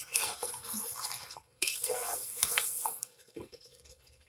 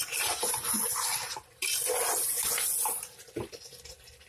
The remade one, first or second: first